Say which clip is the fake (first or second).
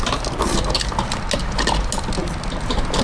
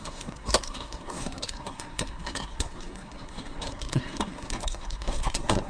second